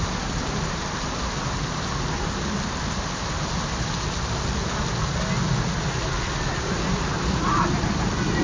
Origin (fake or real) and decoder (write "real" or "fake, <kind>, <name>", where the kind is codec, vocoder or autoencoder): real